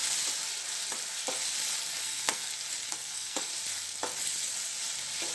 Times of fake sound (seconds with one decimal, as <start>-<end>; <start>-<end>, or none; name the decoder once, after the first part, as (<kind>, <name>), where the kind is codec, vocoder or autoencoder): 2.0-2.5 (codec, SNAC); 2.9-3.5